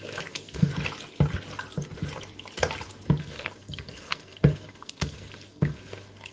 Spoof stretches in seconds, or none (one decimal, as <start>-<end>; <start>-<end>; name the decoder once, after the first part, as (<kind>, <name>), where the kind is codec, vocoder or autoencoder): 0.0-0.7 (codec, SNAC); 3.2-6.3